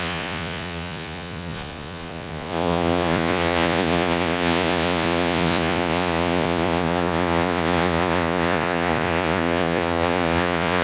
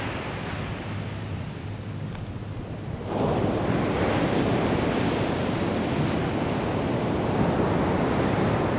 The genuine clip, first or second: second